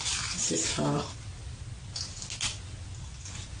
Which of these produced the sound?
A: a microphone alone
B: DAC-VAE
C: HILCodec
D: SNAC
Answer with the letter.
A